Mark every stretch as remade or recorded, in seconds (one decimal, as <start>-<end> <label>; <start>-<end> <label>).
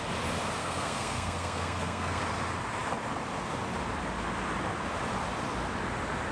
0.0-0.6 recorded; 0.6-2.2 remade; 2.2-6.3 recorded